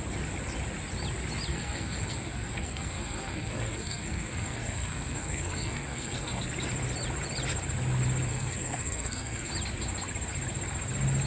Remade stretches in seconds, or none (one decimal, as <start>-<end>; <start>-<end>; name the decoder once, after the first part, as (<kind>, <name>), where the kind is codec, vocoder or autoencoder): 1.5-6.4 (codec, SNAC); 8.3-9.5